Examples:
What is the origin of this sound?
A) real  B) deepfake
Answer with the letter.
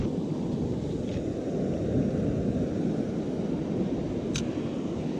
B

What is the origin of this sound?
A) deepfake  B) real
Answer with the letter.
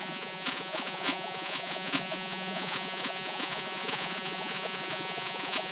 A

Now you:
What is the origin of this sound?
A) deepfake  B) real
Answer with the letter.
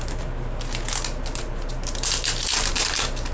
B